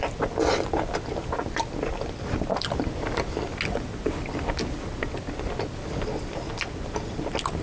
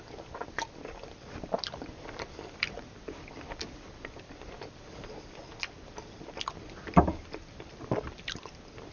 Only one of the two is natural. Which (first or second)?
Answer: first